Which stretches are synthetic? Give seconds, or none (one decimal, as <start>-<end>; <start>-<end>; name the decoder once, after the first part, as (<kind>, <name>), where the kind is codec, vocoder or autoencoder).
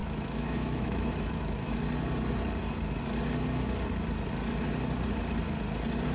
0.0-1.8 (autoencoder, DAC-VAE)